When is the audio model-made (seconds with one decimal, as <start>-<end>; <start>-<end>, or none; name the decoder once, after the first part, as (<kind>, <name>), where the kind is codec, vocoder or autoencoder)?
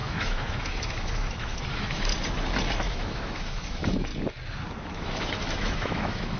0.0-2.1 (autoencoder, DAC-VAE); 2.8-4.1; 4.8-6.4